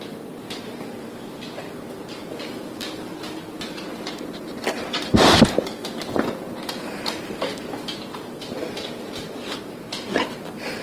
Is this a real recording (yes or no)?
yes